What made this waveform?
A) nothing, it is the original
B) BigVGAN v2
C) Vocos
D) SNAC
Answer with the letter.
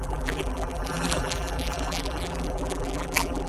B